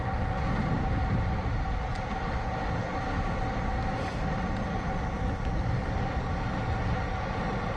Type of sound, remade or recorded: recorded